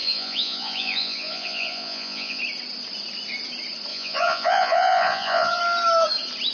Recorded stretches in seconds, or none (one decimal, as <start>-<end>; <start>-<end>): 2.4-3.9; 5.6-6.5

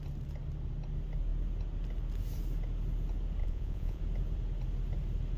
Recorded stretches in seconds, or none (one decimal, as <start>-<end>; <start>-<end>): 0.0-3.4; 4.0-5.4